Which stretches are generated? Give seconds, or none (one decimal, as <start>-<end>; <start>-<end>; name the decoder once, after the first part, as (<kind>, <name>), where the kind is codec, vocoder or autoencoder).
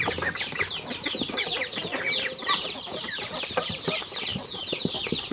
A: 0.0-5.3 (vocoder, BigVGAN v2)